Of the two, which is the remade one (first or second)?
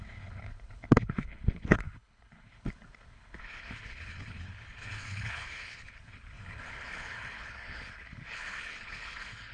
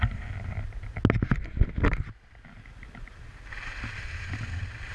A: first